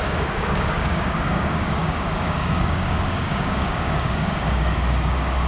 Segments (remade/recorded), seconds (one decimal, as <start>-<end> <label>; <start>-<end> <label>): 0.0-5.5 remade